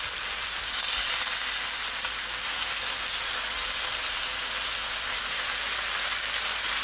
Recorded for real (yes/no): yes